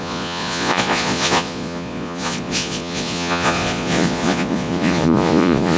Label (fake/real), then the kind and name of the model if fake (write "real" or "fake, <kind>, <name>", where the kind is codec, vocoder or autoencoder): fake, vocoder, Vocos